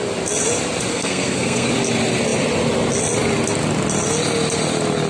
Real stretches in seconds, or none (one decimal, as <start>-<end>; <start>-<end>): 0.0-0.9; 1.7-5.1